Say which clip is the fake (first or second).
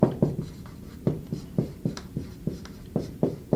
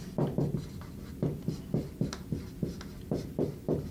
first